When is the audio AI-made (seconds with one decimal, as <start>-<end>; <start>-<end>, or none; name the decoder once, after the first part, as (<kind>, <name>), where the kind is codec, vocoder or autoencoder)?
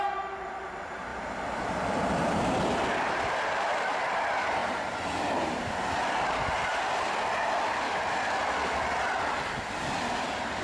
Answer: 1.1-3.3 (vocoder, BigVGAN v2); 4.6-6.0